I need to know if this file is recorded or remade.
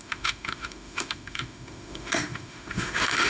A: remade